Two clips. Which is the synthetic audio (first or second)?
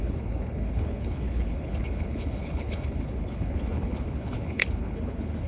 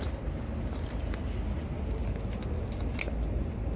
first